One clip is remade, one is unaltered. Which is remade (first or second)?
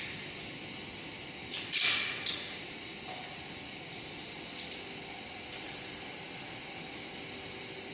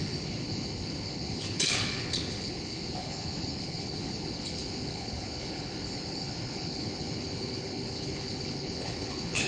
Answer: second